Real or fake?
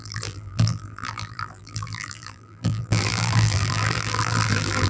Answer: fake